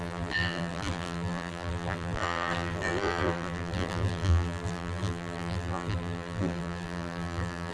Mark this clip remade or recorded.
remade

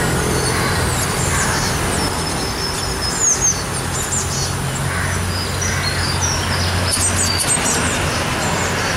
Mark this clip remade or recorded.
recorded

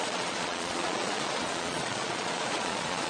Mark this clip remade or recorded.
remade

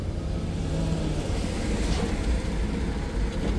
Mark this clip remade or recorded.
recorded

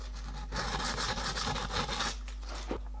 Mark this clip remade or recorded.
recorded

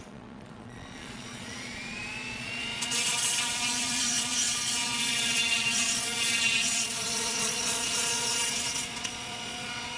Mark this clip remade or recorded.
remade